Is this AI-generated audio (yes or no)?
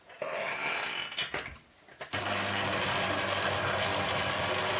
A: no